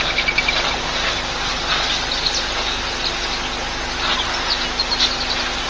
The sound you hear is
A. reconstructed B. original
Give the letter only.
B